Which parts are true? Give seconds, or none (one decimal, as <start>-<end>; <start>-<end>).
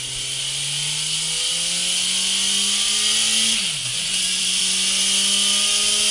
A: 0.0-3.8; 4.6-6.1